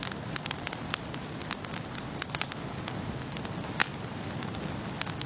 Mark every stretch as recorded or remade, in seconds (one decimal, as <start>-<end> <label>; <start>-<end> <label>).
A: 0.0-5.3 recorded